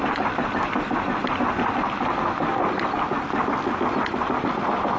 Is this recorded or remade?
recorded